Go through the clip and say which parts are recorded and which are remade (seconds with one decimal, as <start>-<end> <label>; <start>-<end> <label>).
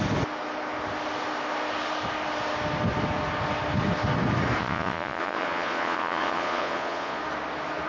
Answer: 0.0-4.6 recorded; 4.6-7.2 remade; 7.2-7.9 recorded